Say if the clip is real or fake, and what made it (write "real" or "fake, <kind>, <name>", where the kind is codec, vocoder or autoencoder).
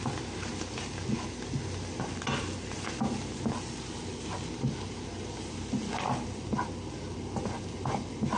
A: real